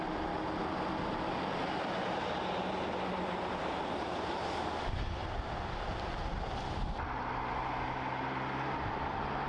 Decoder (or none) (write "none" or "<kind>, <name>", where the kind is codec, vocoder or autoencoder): none